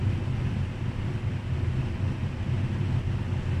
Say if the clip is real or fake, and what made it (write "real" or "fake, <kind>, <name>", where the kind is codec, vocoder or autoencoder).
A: real